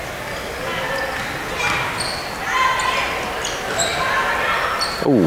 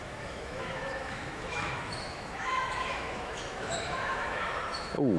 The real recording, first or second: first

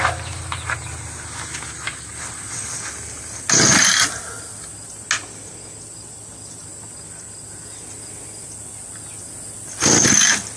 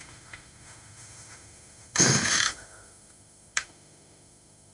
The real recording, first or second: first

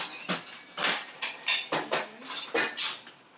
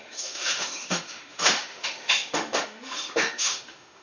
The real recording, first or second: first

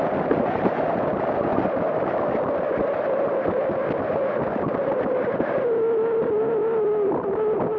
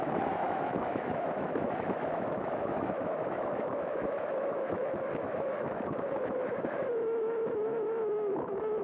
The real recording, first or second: first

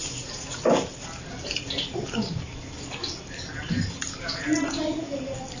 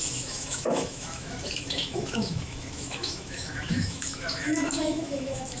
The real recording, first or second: first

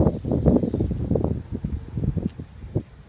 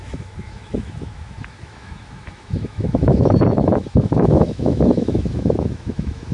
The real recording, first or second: first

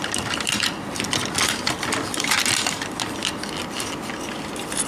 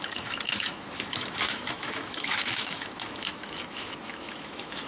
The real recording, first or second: first